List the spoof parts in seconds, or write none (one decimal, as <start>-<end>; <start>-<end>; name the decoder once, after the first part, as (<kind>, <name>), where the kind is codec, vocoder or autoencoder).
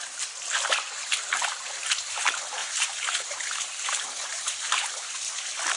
2.6-4.9 (vocoder, BigVGAN v2)